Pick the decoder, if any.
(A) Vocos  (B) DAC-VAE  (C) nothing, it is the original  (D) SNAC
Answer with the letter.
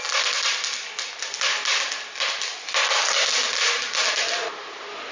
C